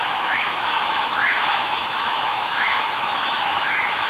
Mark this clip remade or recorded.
remade